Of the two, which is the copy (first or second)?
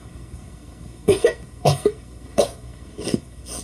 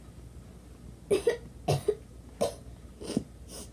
first